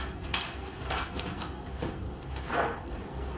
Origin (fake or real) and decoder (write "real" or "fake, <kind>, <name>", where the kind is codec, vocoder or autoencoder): fake, codec, SNAC